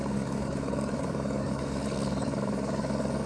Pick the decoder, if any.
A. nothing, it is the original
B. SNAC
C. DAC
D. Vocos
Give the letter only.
C